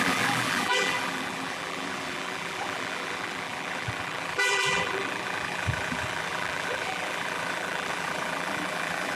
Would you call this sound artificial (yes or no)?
yes